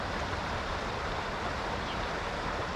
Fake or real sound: real